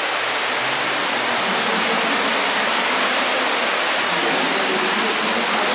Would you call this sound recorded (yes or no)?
yes